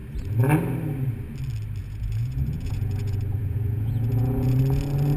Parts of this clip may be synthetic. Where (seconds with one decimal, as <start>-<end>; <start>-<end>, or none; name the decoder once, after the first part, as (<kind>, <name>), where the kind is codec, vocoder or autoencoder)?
1.8-4.6 (vocoder, Vocos)